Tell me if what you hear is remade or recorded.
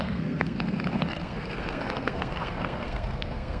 remade